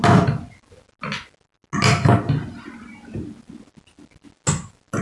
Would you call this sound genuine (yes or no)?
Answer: yes